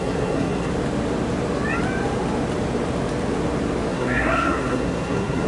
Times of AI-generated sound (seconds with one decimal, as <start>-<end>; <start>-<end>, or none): 0.0-0.7; 3.9-5.5